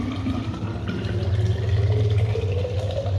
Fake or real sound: real